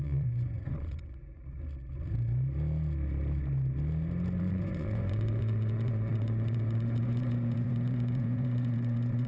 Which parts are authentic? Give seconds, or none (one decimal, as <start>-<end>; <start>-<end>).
1.4-4.4